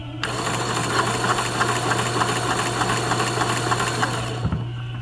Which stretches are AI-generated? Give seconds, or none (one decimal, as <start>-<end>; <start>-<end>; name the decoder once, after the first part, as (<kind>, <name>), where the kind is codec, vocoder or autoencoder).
none